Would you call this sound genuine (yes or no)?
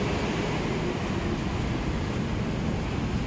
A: yes